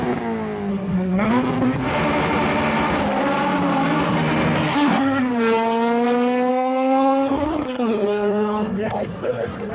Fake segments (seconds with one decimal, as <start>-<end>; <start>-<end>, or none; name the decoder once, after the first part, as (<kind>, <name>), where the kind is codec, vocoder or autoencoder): 0.7-1.3 (codec, SNAC); 4.7-5.3; 6.5-9.7